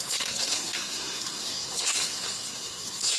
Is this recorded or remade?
remade